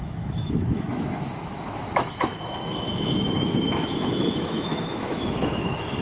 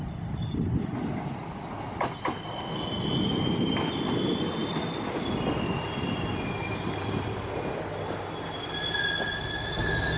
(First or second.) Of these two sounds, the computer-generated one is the first